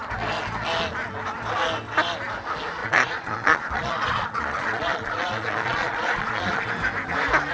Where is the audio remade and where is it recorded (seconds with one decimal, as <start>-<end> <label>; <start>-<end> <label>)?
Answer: 0.0-2.8 recorded; 2.8-6.7 remade; 6.7-7.5 recorded